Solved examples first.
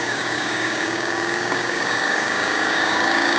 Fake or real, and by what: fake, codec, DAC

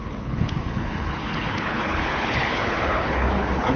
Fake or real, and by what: fake, codec, HILCodec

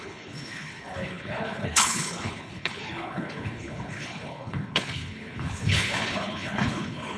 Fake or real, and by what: fake, codec, HILCodec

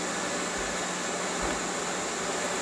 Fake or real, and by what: real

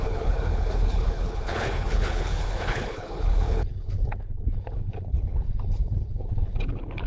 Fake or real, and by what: fake, codec, HILCodec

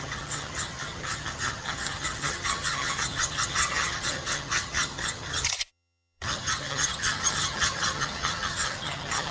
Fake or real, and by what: fake, vocoder, HiFi-GAN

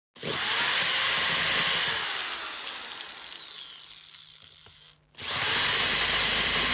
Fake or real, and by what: real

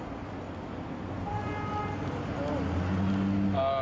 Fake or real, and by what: real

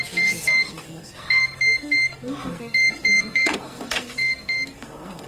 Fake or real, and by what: fake, codec, SNAC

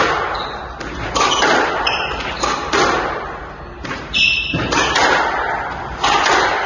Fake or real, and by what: real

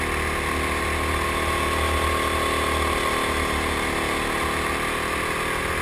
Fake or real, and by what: real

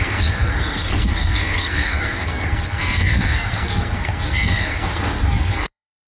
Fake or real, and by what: fake, codec, SNAC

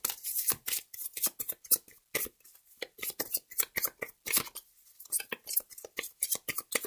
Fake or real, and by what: real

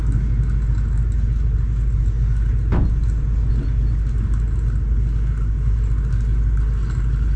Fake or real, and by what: real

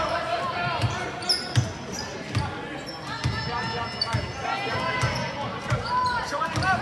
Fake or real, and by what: real